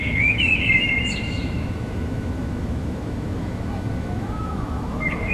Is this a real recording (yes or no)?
no